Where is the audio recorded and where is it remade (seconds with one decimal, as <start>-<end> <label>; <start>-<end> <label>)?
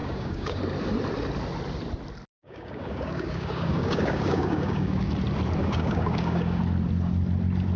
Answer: 0.0-0.6 remade; 0.6-2.3 recorded; 2.3-5.1 remade; 5.1-5.6 recorded; 5.6-6.6 remade; 6.6-7.8 recorded